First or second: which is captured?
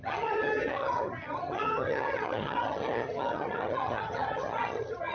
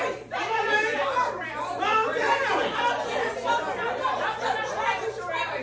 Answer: second